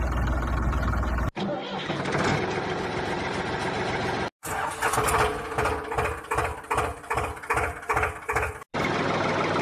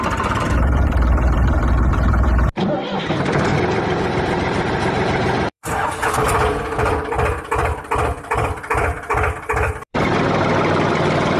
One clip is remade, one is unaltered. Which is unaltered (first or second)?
first